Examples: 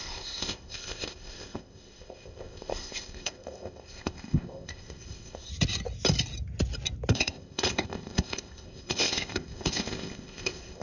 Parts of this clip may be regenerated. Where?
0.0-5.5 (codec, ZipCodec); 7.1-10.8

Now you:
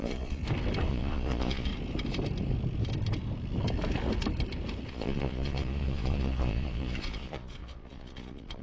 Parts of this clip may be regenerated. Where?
0.0-0.4 (vocoder, Vocos); 0.9-1.7; 4.9-8.6

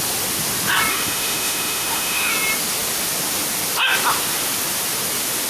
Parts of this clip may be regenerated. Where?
0.9-2.3 (autoencoder, DAC-VAE)

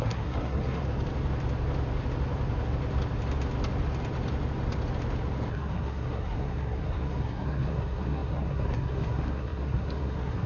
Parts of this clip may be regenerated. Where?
0.0-0.8 (codec, SNAC); 5.5-10.5

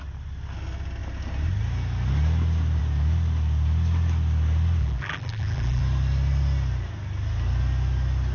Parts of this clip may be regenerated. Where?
4.8-5.8 (vocoder, BigVGAN v2)